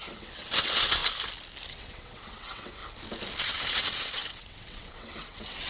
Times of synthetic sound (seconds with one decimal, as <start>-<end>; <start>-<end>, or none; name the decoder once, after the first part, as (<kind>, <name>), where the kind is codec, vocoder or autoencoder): 0.0-1.0 (vocoder, WaveNeXt); 1.7-2.8; 3.4-5.7